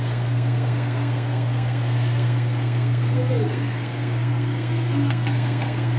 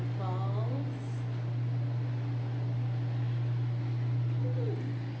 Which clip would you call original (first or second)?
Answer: second